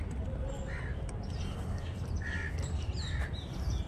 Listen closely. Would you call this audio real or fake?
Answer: real